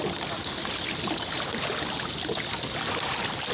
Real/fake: real